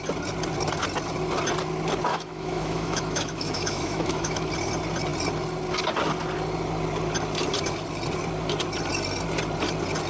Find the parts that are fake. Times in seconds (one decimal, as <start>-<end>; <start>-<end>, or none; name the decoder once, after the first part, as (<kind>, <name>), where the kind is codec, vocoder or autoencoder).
2.1-4.5 (autoencoder, DAC-VAE)